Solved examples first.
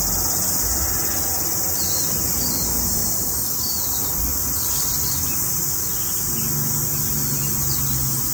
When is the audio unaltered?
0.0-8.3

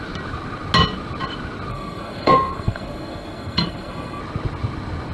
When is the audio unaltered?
0.0-1.7; 4.2-5.1

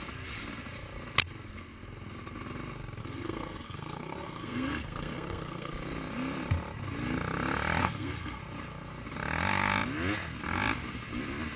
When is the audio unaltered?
0.0-3.0; 5.7-7.8; 8.4-11.6

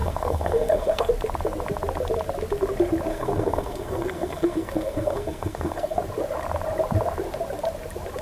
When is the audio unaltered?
1.1-3.1; 6.0-8.2

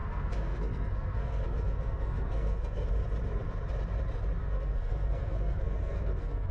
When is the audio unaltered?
2.9-4.4

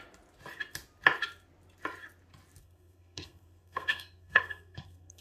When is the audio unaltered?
0.0-2.6

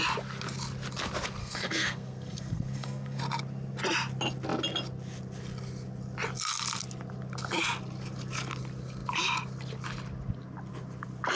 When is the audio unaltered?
0.0-1.4; 3.2-11.4

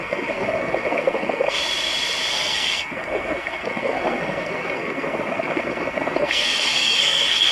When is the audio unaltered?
1.6-2.3